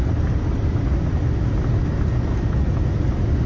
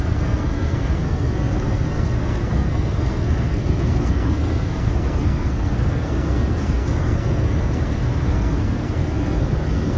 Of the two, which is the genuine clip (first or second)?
first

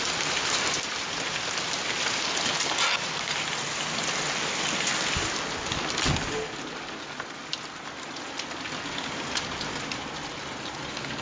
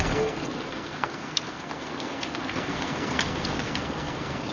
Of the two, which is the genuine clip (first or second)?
first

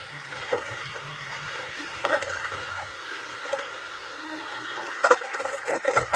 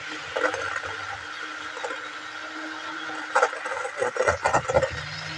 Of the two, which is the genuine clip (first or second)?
second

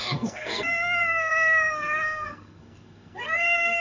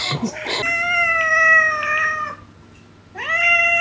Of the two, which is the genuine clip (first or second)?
second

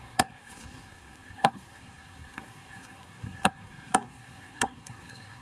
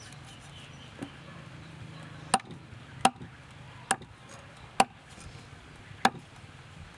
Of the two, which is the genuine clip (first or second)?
second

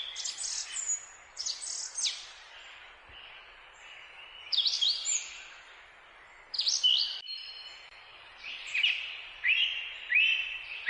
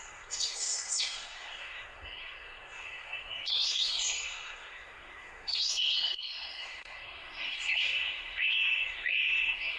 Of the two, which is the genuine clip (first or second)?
first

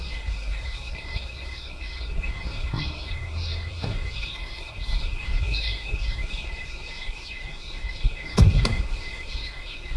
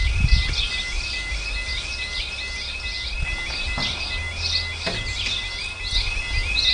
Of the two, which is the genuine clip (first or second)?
second